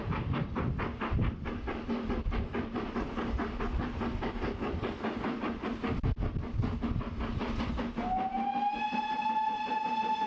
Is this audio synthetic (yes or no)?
no